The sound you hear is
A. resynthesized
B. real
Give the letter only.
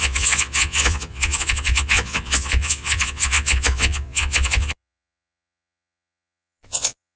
A